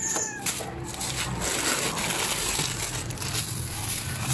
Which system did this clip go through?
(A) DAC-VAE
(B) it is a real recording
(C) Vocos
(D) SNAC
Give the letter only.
B